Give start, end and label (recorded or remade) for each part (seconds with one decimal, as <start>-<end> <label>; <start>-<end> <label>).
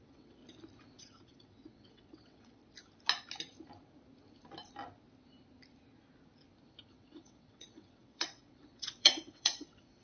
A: 0.0-0.4 remade; 0.4-1.0 recorded; 1.0-2.6 remade; 2.6-6.9 recorded; 6.9-10.0 remade